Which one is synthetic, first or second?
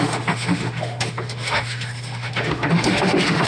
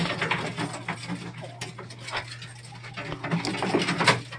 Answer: first